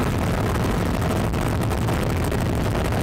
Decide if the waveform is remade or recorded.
recorded